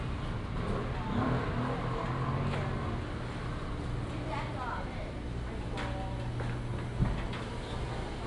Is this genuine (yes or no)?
yes